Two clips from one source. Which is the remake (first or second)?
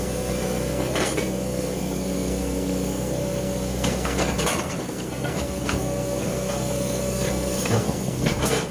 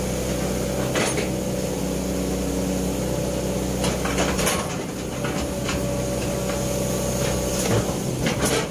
first